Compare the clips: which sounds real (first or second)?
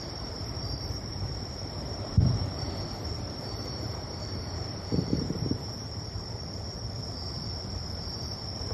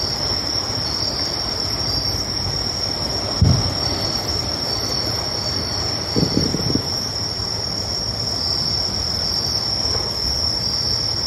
second